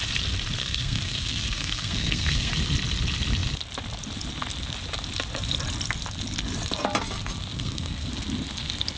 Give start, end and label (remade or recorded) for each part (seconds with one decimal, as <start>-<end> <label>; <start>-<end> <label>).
0.0-0.6 recorded; 0.6-2.5 remade; 2.5-7.5 recorded; 7.5-8.1 remade; 8.1-9.0 recorded